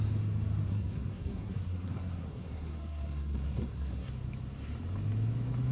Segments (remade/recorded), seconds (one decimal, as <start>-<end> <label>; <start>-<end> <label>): 0.0-0.7 recorded; 0.7-4.1 remade; 4.1-5.7 recorded